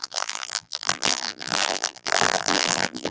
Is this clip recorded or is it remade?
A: remade